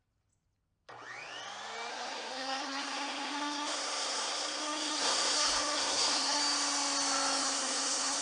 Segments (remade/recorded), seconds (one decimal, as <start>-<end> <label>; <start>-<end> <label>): 0.0-1.9 recorded; 1.9-6.4 remade; 6.4-7.4 recorded; 7.4-8.2 remade